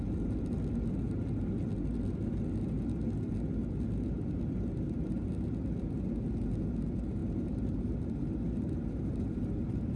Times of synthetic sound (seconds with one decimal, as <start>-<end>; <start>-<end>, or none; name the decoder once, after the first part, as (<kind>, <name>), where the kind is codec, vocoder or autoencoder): 7.2-10.0 (vocoder, BigVGAN v2)